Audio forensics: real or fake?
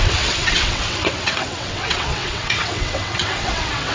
fake